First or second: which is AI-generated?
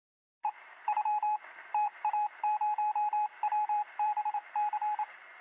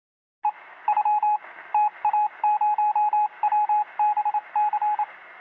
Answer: first